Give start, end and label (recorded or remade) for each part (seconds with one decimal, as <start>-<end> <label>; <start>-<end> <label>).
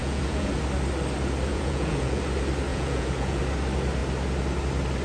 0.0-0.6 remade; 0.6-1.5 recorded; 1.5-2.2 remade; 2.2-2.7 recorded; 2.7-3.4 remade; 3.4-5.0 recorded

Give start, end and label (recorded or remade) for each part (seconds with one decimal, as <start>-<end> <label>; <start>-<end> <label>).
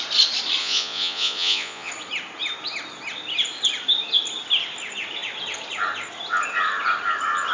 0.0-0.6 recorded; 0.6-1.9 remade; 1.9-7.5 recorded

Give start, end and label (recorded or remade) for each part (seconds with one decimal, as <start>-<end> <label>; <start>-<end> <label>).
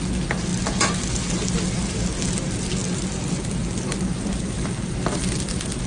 0.0-5.9 recorded